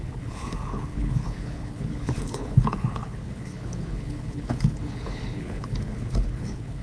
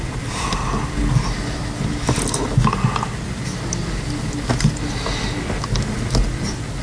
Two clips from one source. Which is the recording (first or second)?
second